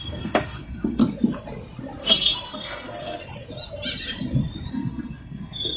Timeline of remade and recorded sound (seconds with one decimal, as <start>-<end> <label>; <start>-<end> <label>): 0.0-1.0 remade; 1.0-2.0 recorded; 2.0-3.2 remade; 3.2-4.7 recorded; 4.7-5.8 remade